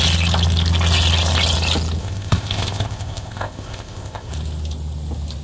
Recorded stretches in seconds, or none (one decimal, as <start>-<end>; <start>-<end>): 0.0-2.0; 4.3-5.4